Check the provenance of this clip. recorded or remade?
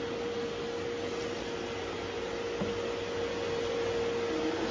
recorded